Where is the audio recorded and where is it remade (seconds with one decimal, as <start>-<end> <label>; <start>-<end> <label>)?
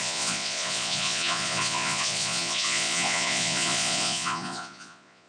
0.0-5.3 remade